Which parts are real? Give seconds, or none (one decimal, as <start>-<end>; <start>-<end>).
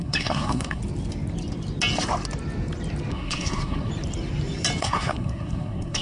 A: 0.8-3.1; 3.9-4.8